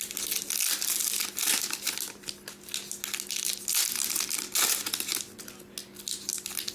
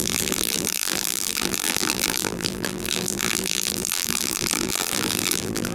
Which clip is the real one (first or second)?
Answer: first